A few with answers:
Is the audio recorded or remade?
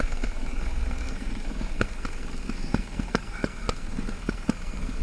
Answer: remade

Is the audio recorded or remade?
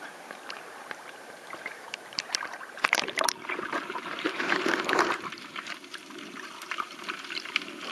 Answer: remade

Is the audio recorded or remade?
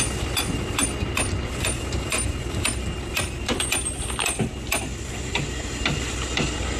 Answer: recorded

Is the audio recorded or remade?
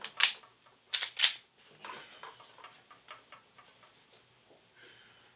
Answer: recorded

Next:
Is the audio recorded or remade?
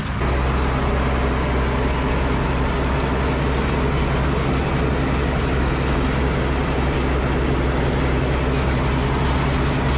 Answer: recorded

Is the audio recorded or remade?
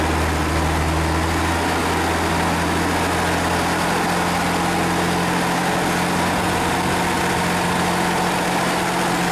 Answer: recorded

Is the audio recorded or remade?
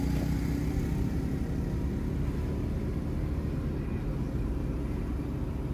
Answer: recorded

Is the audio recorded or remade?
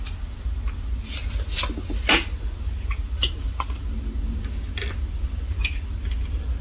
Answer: recorded